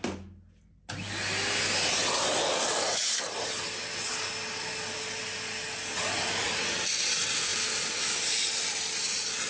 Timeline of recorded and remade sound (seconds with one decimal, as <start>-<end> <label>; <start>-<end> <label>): 0.0-9.5 recorded